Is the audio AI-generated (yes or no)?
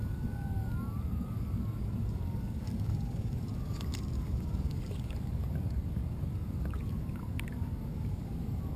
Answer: yes